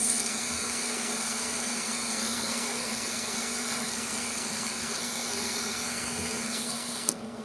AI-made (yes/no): yes